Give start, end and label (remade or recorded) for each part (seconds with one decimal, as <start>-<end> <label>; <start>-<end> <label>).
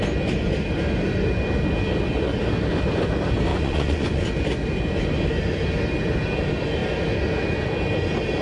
0.0-3.5 recorded; 3.5-4.2 remade; 4.2-8.4 recorded